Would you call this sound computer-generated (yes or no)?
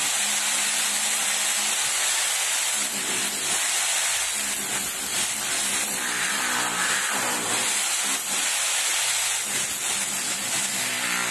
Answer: no